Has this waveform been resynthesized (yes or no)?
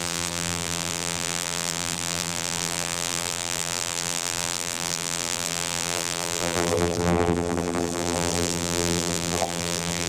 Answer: yes